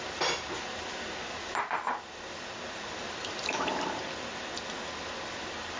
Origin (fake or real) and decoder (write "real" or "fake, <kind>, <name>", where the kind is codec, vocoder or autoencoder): real